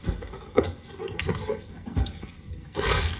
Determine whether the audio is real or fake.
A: fake